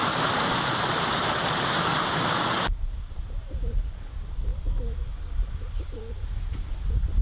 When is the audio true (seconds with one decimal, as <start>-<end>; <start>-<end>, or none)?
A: 4.1-7.2